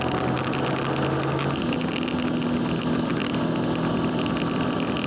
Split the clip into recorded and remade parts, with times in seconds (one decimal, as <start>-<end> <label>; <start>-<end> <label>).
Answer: 0.0-5.1 recorded